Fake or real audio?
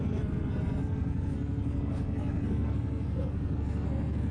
fake